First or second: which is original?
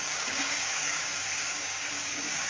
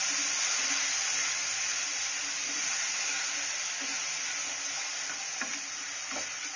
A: second